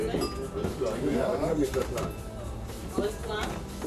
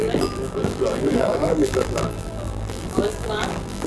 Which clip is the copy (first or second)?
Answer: second